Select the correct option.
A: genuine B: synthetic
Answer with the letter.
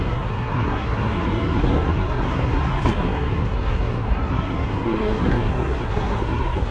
B